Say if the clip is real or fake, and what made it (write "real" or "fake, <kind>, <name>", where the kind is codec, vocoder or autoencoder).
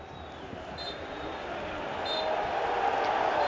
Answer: real